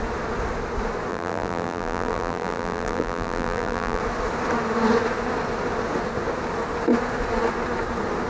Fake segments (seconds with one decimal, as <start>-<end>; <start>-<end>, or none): 1.1-4.0